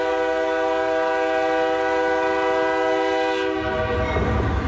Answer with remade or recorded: recorded